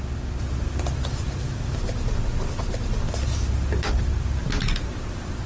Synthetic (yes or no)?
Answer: no